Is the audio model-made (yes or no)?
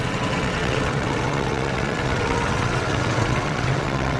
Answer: yes